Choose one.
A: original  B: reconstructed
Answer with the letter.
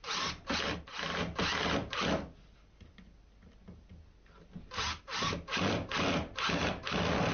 A